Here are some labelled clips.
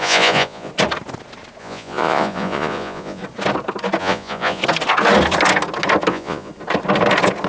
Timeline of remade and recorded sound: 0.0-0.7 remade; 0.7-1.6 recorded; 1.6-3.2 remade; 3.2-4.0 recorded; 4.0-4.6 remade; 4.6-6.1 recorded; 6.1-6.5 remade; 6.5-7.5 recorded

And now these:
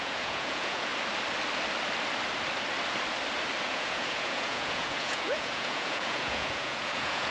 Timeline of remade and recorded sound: 0.0-0.9 remade; 0.9-3.6 recorded; 3.6-7.3 remade

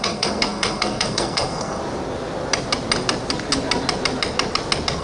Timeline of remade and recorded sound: 0.0-1.8 remade; 1.8-5.0 recorded

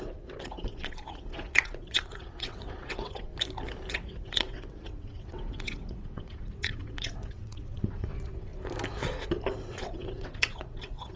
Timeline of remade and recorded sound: 0.0-3.3 remade; 3.3-3.9 recorded; 3.9-8.5 remade; 8.5-9.7 recorded; 9.7-11.2 remade

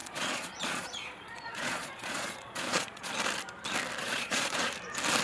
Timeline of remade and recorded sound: 0.0-3.1 remade; 3.1-4.0 recorded; 4.0-4.7 remade; 4.7-5.2 recorded